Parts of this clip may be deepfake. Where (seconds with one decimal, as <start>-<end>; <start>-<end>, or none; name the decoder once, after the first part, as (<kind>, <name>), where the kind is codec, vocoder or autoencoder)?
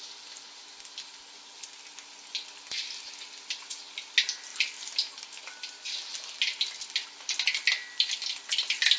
4.5-5.4 (vocoder, BigVGAN v2)